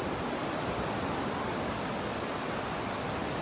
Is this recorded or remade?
recorded